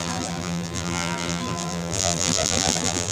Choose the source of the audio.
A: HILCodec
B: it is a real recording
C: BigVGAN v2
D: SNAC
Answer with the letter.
C